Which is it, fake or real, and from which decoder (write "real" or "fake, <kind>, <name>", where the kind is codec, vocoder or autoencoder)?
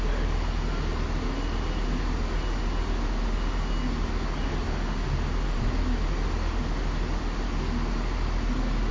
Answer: real